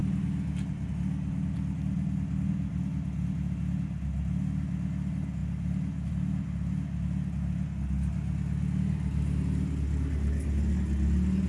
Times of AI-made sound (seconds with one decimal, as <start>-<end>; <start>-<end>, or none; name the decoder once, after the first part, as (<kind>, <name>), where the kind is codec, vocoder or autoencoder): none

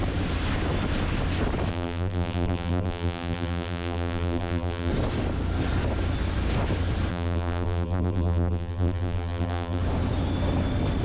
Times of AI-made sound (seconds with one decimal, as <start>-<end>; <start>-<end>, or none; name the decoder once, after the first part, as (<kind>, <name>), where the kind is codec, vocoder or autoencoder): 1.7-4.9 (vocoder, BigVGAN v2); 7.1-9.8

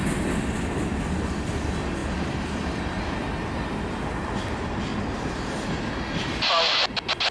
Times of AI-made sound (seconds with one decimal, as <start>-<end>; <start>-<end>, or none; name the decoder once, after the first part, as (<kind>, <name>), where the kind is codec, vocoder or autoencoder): none

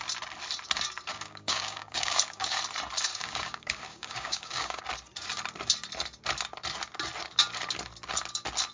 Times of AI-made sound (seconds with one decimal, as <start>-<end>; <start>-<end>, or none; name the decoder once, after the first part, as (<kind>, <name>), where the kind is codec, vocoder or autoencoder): 1.1-2.6 (codec, DAC); 3.1-4.8

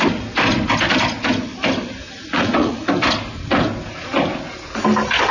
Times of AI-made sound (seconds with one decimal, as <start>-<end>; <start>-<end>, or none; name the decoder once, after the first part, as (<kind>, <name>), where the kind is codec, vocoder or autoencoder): 2.0-2.9 (vocoder, Vocos)